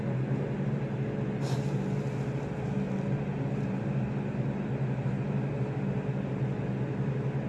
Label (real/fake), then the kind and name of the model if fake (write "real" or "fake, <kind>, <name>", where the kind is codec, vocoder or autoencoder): real